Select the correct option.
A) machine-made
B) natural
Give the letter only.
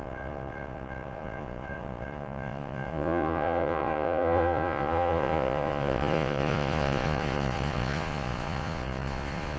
A